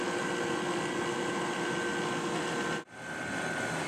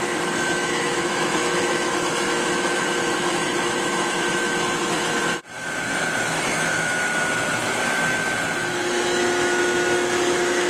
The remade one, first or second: second